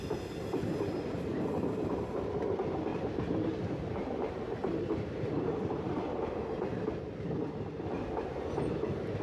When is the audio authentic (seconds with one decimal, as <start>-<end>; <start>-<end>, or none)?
0.0-2.9; 6.5-9.2